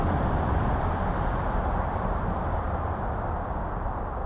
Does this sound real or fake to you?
real